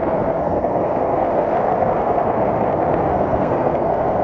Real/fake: fake